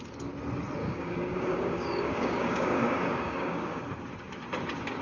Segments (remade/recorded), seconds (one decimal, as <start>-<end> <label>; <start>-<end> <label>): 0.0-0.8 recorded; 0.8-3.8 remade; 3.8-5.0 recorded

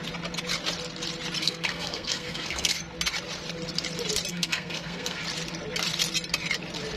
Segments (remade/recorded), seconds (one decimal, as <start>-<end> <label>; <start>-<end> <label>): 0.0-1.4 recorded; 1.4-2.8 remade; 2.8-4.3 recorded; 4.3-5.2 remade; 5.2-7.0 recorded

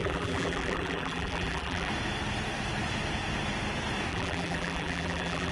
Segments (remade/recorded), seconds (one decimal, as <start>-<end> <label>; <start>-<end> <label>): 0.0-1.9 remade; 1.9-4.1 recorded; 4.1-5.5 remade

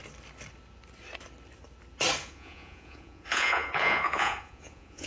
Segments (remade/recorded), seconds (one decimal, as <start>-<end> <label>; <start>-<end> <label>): 0.0-2.2 recorded; 2.2-5.1 remade

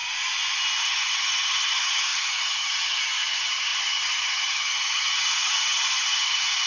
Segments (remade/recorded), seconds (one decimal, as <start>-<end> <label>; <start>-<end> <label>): 0.0-0.8 recorded; 0.8-6.7 remade

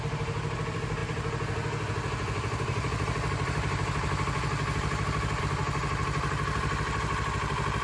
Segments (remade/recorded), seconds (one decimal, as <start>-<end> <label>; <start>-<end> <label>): 0.0-7.8 recorded

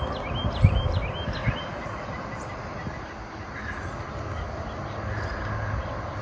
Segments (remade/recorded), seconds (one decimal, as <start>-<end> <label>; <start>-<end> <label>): 0.0-0.4 recorded; 0.4-1.0 remade; 1.0-6.2 recorded